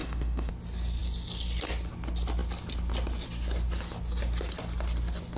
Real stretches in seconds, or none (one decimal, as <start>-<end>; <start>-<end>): 0.5-5.4